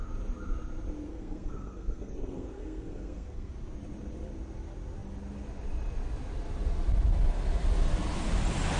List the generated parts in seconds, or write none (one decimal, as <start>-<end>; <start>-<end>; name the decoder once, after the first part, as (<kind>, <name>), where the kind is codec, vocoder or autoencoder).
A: 1.1-3.5 (codec, SNAC)